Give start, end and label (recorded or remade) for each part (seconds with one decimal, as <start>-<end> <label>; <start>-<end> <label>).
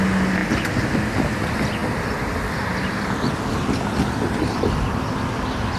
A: 0.0-5.8 recorded